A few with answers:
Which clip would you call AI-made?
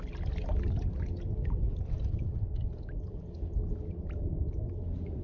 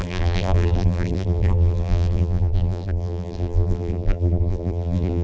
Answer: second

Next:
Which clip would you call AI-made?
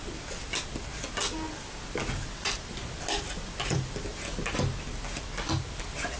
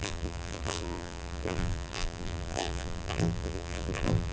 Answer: second